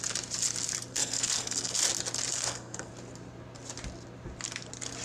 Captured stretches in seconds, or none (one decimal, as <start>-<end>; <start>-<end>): 0.0-0.9; 1.8-2.3; 2.9-5.0